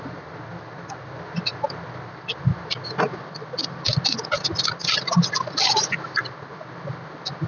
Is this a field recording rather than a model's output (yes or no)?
yes